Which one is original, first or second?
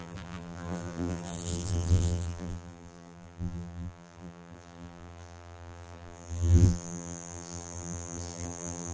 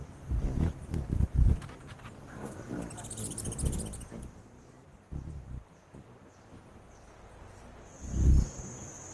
second